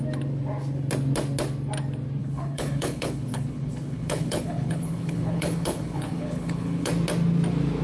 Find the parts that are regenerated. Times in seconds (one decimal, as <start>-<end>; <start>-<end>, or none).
2.2-6.9